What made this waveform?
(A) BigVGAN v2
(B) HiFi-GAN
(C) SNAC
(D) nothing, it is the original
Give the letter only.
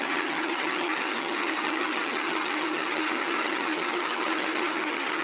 B